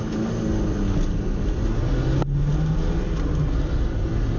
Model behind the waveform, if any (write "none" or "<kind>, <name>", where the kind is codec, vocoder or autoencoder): none